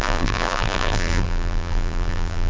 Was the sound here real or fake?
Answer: fake